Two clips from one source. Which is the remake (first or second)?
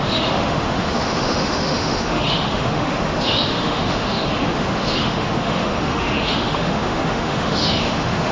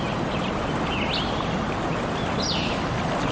first